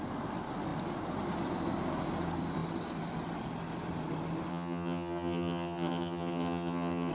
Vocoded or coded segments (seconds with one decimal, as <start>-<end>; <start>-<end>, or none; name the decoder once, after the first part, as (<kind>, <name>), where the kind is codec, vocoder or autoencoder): 4.5-7.1 (vocoder, HiFi-GAN)